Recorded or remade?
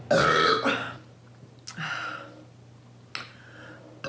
recorded